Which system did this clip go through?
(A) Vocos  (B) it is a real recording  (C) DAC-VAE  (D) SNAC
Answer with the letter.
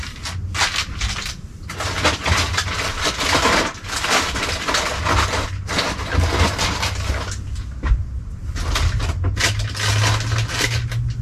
B